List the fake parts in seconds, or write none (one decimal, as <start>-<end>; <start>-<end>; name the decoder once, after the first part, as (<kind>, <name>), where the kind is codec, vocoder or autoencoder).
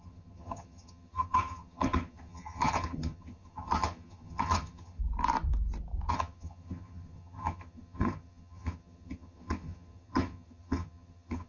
0.0-5.0 (vocoder, HiFi-GAN); 6.1-11.5